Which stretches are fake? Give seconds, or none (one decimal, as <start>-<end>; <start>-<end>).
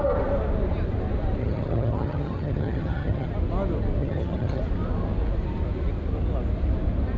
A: 1.4-3.3; 4.0-4.6